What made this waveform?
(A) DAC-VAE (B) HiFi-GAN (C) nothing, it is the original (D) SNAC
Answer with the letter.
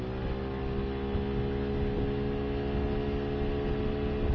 C